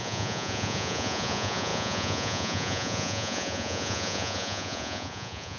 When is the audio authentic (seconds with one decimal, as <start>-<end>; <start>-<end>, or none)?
none